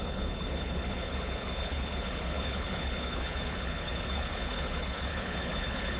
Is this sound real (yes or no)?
no